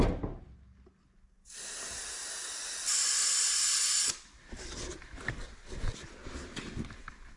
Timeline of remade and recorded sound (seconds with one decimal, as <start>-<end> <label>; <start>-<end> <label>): 0.0-7.4 recorded